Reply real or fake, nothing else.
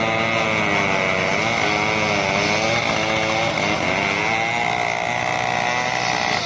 real